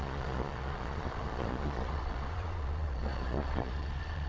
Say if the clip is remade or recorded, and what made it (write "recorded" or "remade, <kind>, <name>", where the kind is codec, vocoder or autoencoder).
remade, vocoder, Vocos